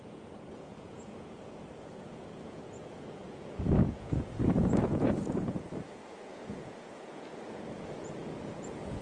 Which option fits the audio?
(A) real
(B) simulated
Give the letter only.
B